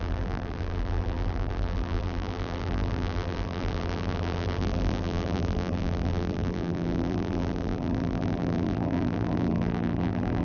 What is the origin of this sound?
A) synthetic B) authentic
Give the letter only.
A